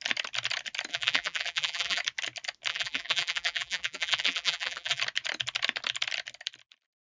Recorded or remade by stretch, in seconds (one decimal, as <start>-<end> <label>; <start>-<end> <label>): 0.0-0.9 recorded; 0.9-2.0 remade; 2.0-2.7 recorded; 2.7-5.0 remade; 5.0-7.0 recorded